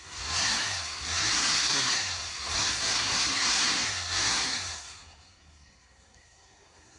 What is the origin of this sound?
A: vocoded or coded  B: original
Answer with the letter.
A